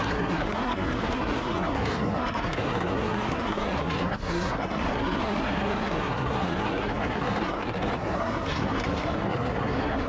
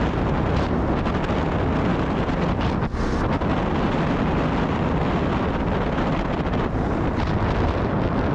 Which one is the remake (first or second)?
first